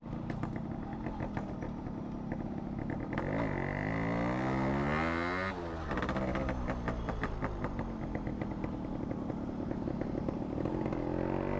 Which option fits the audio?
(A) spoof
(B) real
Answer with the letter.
B